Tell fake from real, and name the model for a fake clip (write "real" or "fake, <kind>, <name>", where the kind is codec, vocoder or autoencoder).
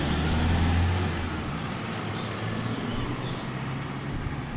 real